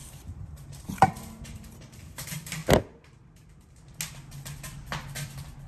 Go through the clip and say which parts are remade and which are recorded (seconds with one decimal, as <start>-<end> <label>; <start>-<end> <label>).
0.0-2.6 remade; 2.6-5.7 recorded